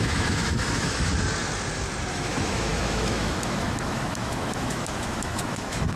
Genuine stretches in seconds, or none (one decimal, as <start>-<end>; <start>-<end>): 1.1-2.1